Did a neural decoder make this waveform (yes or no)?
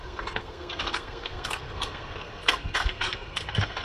yes